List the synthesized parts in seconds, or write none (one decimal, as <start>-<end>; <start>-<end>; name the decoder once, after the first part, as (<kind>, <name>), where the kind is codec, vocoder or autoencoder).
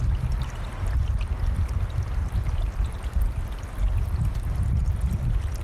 2.2-2.9 (vocoder, BigVGAN v2)